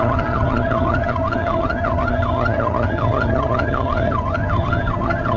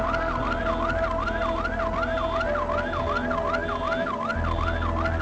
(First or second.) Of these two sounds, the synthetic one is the first